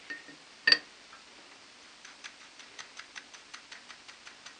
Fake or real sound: real